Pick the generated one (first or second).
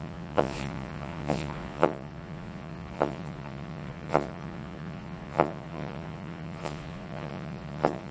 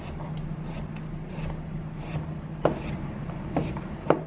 first